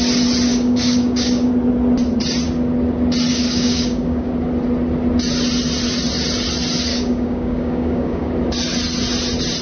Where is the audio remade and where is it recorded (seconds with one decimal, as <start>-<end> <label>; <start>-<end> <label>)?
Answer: 0.0-0.5 recorded; 0.5-1.5 remade; 1.5-3.3 recorded; 3.3-4.3 remade; 4.3-6.9 recorded; 6.9-8.3 remade; 8.3-9.6 recorded